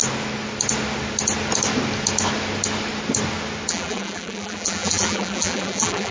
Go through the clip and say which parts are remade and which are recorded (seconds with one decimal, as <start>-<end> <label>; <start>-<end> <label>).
0.0-3.7 recorded; 3.7-6.1 remade